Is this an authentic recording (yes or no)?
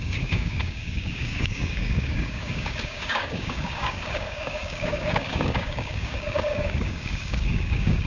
no